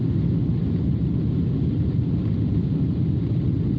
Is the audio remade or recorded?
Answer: recorded